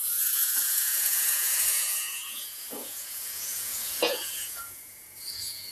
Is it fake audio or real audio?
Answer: fake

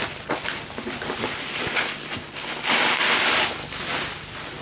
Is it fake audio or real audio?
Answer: real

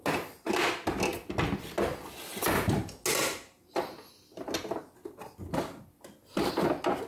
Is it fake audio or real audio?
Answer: real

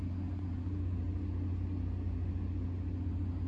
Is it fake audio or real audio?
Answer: real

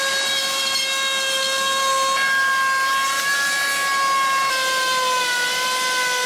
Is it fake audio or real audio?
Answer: real